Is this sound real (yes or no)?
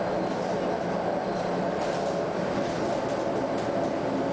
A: yes